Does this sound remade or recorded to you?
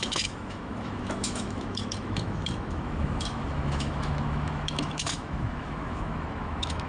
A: remade